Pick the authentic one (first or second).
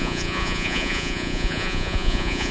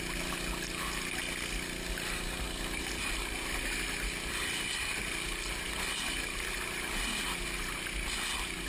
second